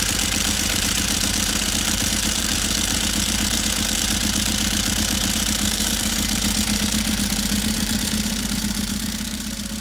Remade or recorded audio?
remade